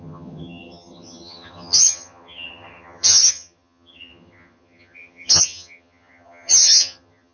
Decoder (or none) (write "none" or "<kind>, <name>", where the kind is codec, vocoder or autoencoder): vocoder, HiFi-GAN